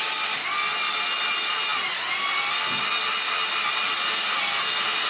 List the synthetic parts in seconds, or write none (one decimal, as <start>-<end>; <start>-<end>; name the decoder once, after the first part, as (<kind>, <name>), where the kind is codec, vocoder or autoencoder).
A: none